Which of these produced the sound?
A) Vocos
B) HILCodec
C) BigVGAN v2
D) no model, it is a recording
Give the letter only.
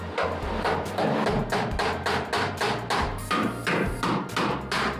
D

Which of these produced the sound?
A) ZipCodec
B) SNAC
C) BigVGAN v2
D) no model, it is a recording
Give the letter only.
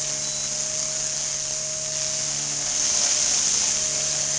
D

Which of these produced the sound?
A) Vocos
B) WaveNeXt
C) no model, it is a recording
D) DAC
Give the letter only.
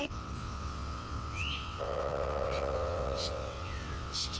B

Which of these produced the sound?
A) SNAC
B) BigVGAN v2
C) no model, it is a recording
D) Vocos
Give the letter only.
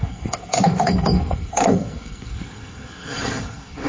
A